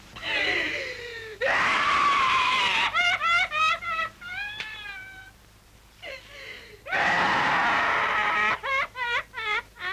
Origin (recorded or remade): remade